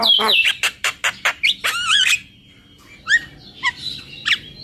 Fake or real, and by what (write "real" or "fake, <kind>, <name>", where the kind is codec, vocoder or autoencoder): fake, vocoder, BigVGAN v2